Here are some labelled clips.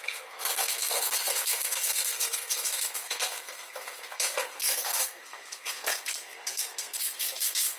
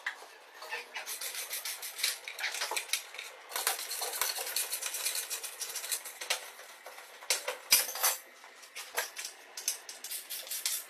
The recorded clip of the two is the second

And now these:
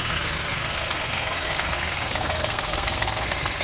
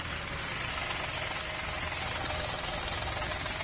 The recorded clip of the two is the second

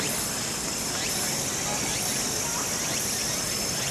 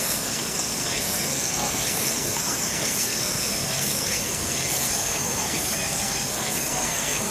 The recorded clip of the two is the first